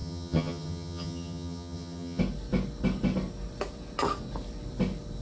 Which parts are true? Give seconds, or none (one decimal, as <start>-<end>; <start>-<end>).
2.2-5.2